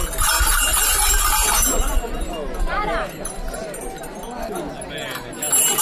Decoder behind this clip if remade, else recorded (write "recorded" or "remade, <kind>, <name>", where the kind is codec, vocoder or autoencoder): recorded